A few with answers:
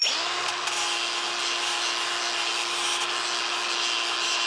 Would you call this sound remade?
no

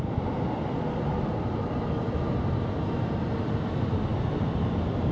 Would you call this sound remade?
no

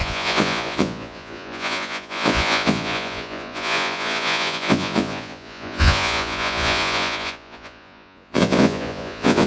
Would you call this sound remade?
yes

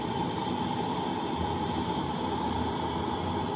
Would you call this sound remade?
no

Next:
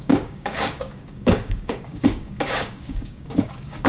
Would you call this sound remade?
yes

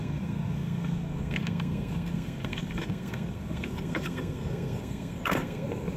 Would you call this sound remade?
yes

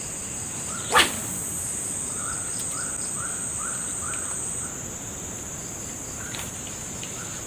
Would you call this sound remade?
no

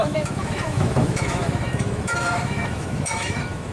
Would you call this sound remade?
yes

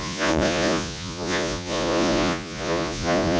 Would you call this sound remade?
yes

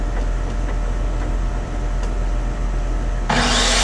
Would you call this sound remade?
no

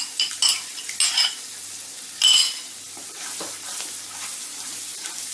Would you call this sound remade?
no